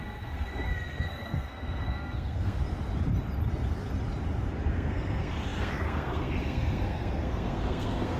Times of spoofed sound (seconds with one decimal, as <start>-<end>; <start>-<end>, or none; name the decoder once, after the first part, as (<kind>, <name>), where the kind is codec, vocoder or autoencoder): 0.0-2.6 (codec, SNAC); 4.7-8.2